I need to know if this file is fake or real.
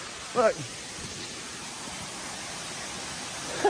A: real